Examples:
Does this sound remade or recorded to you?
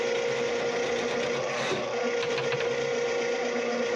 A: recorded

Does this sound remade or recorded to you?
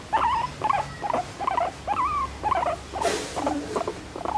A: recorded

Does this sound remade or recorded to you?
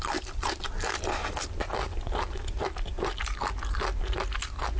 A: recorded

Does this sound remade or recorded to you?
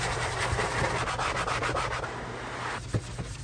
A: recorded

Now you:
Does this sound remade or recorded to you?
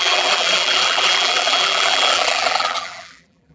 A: remade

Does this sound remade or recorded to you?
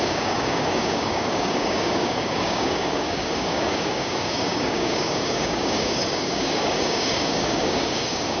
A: remade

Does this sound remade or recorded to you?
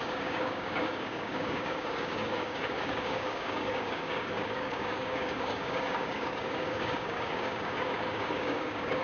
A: remade